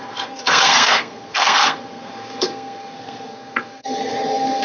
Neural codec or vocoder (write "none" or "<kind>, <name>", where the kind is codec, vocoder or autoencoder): codec, SNAC